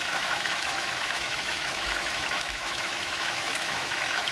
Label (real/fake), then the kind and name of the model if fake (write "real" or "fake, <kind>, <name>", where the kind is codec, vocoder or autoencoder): fake, autoencoder, DAC-VAE